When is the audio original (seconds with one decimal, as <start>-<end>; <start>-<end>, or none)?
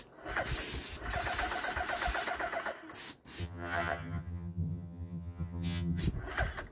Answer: 0.0-3.4; 6.0-6.7